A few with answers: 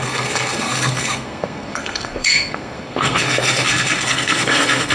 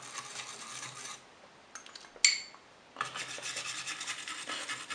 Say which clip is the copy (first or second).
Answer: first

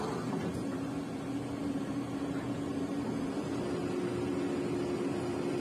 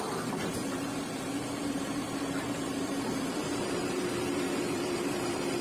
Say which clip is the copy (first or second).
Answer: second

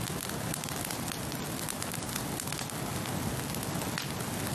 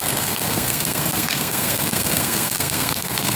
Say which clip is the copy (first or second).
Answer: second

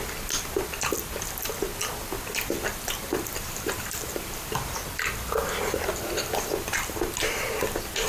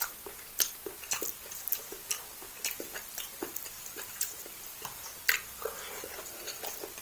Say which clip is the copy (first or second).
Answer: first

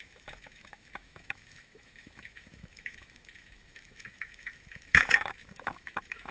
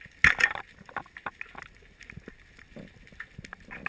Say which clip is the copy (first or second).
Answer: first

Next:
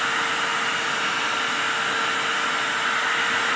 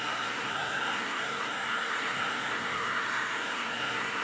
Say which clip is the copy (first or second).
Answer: second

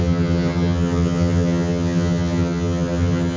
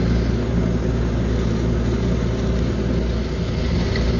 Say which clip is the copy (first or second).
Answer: first